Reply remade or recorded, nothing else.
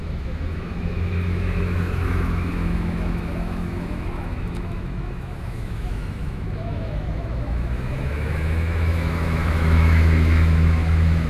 remade